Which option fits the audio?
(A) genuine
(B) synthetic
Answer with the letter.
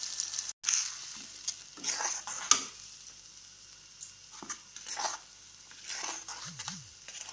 A